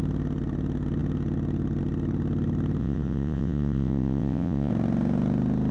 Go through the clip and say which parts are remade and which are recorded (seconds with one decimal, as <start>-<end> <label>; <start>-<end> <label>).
0.0-2.8 recorded; 2.8-4.7 remade; 4.7-5.7 recorded